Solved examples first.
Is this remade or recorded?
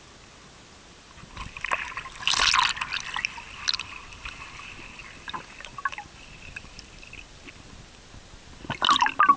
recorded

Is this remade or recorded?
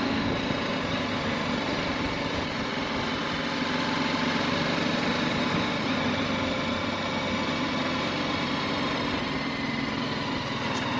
recorded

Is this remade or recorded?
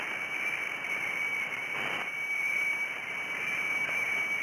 recorded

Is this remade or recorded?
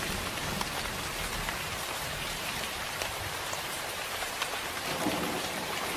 remade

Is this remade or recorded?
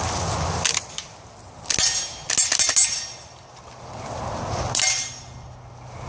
recorded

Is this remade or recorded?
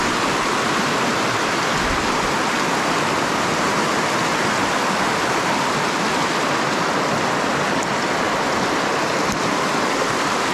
recorded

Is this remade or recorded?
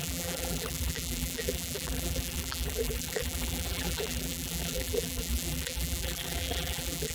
remade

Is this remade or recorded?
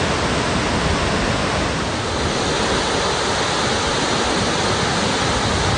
recorded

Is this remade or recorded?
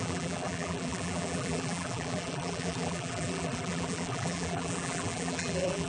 remade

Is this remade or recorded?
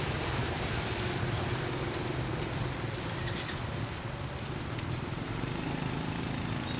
remade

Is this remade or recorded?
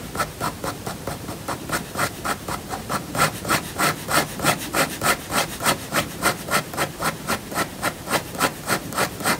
remade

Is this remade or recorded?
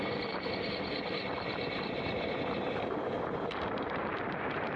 remade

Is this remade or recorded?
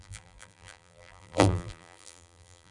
remade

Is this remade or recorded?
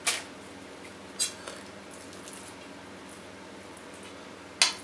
recorded